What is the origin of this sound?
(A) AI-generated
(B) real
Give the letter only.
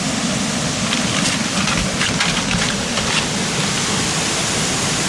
B